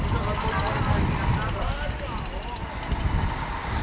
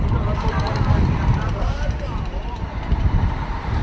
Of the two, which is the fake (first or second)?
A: second